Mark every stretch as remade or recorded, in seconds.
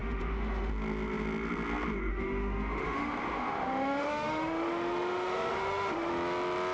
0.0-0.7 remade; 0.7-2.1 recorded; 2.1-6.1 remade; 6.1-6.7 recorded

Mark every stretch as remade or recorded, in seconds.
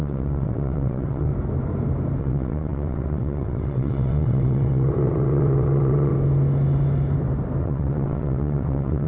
0.0-1.3 remade; 1.3-2.2 recorded; 2.2-6.1 remade; 6.1-7.6 recorded; 7.6-9.1 remade